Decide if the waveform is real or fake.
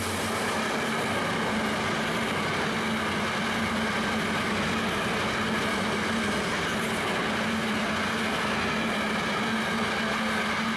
real